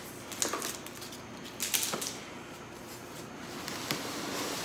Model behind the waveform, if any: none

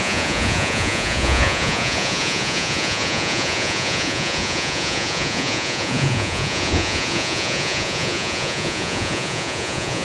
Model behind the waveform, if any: vocoder, Vocos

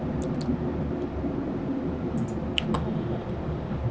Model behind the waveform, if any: none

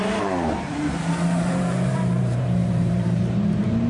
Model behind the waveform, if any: vocoder, BigVGAN v2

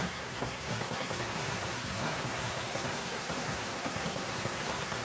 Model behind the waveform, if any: codec, SNAC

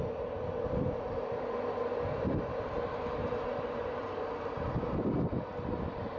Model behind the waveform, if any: none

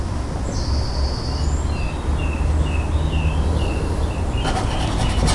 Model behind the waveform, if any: none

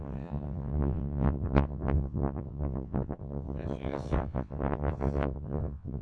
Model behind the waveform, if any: vocoder, WaveNeXt